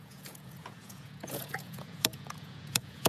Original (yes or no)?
no